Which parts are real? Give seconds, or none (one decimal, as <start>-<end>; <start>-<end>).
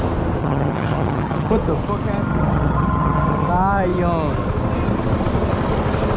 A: 0.0-0.4; 1.5-2.3; 3.5-6.2